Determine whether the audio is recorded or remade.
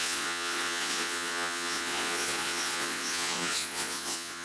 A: remade